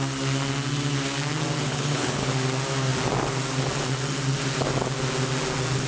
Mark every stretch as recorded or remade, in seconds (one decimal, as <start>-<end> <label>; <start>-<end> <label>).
0.0-1.6 recorded; 1.6-2.3 remade; 2.3-5.9 recorded